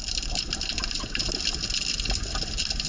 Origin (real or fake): real